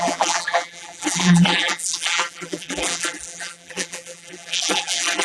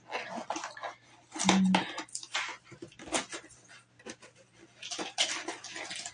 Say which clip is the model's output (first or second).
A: first